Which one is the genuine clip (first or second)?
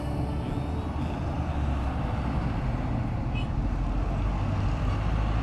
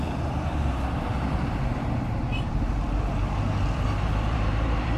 first